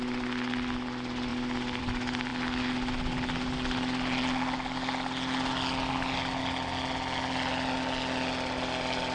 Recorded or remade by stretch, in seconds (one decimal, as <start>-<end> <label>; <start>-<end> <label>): 0.0-9.1 recorded